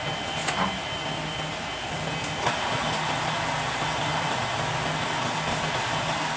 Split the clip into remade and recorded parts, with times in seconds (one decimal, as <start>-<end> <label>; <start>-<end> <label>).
0.0-6.4 recorded